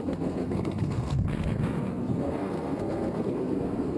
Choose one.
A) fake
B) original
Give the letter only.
A